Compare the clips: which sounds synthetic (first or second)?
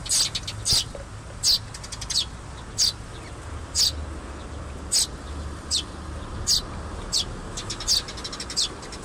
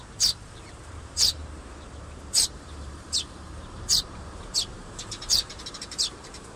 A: second